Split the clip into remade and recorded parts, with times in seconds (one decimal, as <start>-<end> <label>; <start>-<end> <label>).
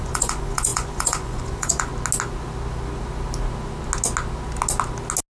0.0-1.9 remade; 1.9-5.4 recorded